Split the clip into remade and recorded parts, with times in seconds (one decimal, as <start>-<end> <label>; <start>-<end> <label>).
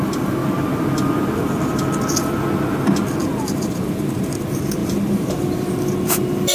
0.0-3.2 recorded; 3.2-4.2 remade; 4.2-4.8 recorded; 4.8-5.7 remade; 5.7-6.5 recorded